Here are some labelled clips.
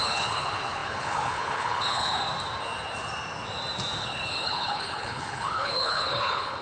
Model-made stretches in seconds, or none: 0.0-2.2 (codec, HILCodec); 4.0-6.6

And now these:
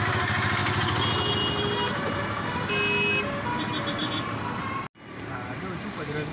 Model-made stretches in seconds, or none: none

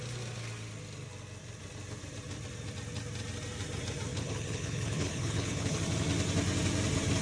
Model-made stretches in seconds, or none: 4.1-5.8 (codec, HILCodec)

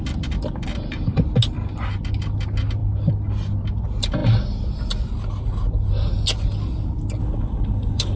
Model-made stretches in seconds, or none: 7.2-8.2 (codec, HILCodec)

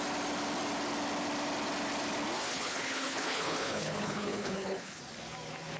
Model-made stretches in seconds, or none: 2.5-5.0 (codec, HILCodec)